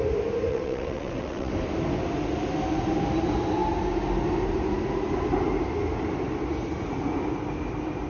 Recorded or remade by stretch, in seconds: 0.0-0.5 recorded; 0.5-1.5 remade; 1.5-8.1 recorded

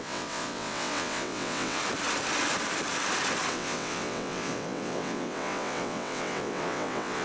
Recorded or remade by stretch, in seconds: 0.0-1.8 remade; 1.8-3.5 recorded; 3.5-7.2 remade

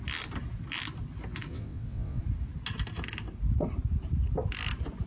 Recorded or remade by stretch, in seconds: 0.0-1.5 recorded; 1.5-2.2 remade; 2.2-5.1 recorded

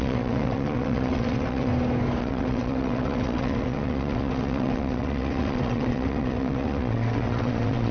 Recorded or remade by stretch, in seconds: 0.0-1.7 remade; 1.7-2.2 recorded; 2.2-7.9 remade

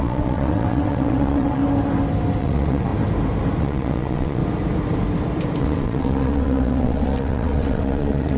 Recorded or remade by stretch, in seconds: 0.0-1.6 remade; 1.6-2.4 recorded; 2.4-2.9 remade; 2.9-3.6 recorded; 3.6-4.4 remade; 4.4-5.6 recorded; 5.6-8.4 remade

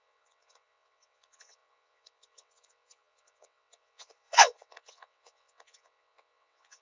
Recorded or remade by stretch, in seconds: 0.0-6.8 remade

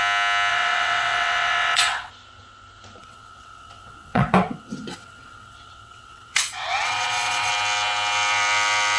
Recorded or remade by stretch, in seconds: 0.0-0.5 recorded; 0.5-2.1 remade; 2.1-3.0 recorded; 3.0-7.5 remade; 7.5-9.0 recorded

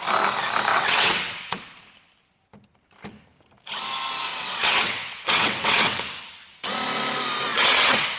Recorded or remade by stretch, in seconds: 0.0-0.7 recorded; 0.7-1.6 remade; 1.6-4.3 recorded; 4.3-6.0 remade; 6.0-7.5 recorded; 7.5-8.2 remade